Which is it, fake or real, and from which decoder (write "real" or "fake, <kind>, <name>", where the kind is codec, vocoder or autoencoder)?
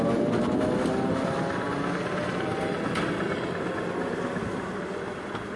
real